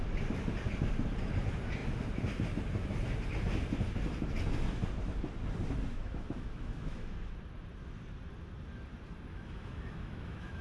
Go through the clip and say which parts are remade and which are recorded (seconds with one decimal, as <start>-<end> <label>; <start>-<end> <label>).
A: 0.0-5.9 recorded; 5.9-7.3 remade; 7.3-9.3 recorded; 9.3-10.6 remade